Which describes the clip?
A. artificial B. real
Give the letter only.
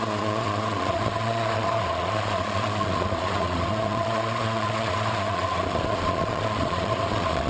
A